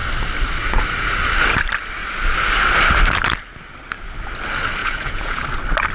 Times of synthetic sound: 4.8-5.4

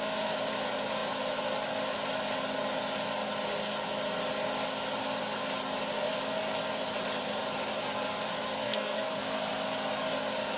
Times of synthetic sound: 8.6-9.2

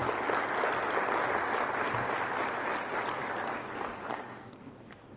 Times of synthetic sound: 4.1-5.2

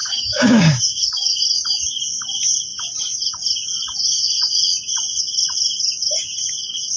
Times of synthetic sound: 0.0-1.4